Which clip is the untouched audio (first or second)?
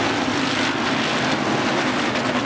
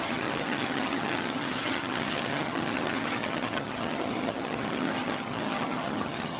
first